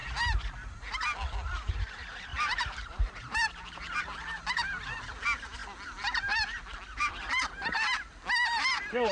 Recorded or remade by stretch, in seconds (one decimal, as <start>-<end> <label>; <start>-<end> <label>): 0.0-2.3 recorded; 2.3-4.0 remade; 4.0-9.1 recorded